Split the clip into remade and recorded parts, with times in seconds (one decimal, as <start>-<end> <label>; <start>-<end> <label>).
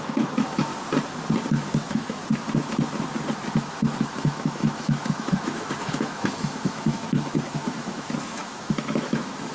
0.0-0.7 remade; 0.7-1.8 recorded; 1.8-2.2 remade; 2.2-3.5 recorded; 3.5-9.5 remade